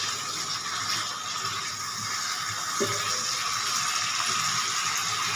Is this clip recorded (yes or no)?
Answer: yes